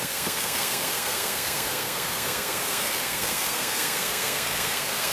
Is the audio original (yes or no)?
no